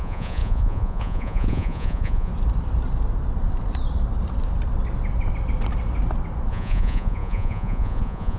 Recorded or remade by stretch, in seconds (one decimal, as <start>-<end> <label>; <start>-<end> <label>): 0.0-2.3 remade; 2.3-6.5 recorded; 6.5-8.4 remade